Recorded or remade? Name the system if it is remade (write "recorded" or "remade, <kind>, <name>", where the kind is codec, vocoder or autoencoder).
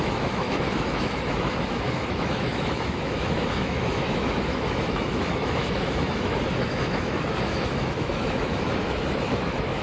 remade, autoencoder, DAC-VAE